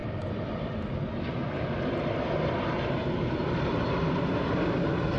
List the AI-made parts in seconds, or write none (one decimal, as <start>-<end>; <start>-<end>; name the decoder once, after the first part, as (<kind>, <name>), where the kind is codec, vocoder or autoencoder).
0.0-0.5 (vocoder, BigVGAN v2); 1.4-4.5